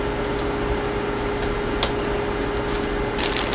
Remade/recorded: recorded